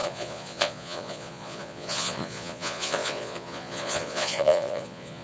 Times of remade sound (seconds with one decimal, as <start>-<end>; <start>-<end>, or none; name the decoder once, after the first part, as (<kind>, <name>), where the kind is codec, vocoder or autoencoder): 0.0-5.2 (vocoder, Vocos)